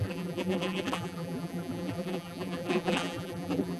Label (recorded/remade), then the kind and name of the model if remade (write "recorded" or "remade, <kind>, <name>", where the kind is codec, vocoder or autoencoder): remade, vocoder, BigVGAN v2